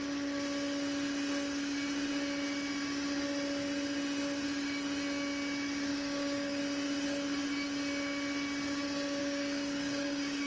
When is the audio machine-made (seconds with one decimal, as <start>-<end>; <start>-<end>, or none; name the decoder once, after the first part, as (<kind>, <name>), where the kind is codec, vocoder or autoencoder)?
5.9-6.6 (codec, DAC); 9.2-10.5